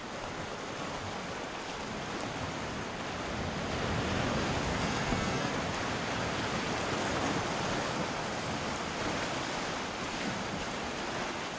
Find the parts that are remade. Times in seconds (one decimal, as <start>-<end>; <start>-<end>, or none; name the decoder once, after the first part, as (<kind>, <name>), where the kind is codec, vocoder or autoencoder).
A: 4.7-5.5 (codec, SNAC)